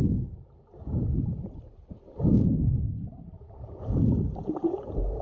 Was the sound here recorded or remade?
recorded